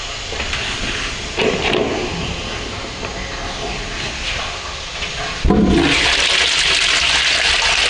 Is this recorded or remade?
recorded